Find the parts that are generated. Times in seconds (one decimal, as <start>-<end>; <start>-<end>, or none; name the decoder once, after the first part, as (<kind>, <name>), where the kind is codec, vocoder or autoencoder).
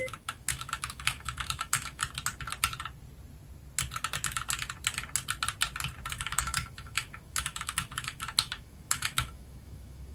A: 0.0-2.0 (autoencoder, DAC-VAE); 6.1-10.1